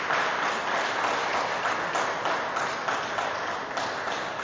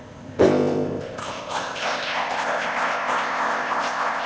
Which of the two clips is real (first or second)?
first